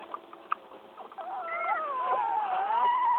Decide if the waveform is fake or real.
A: real